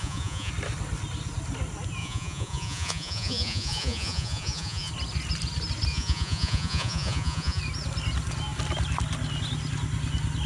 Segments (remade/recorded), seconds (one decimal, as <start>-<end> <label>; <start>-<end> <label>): 0.0-0.5 remade; 0.5-2.0 recorded; 2.0-4.9 remade; 4.9-5.9 recorded; 5.9-7.6 remade; 7.6-10.5 recorded